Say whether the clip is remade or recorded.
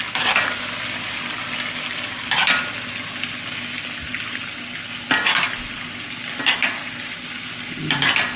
recorded